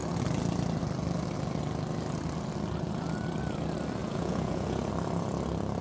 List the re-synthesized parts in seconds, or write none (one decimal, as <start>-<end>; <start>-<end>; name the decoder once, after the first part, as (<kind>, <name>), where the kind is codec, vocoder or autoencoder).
4.0-4.9 (vocoder, Vocos)